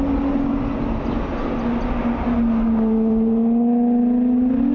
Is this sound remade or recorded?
recorded